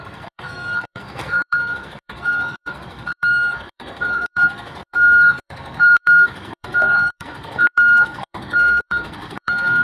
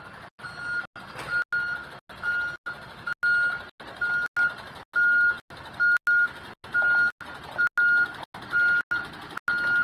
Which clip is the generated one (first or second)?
first